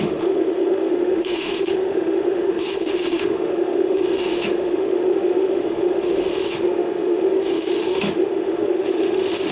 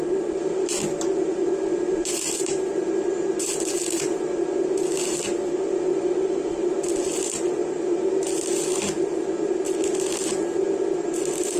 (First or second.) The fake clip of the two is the first